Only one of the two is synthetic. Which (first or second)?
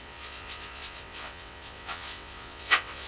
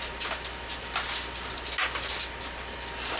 first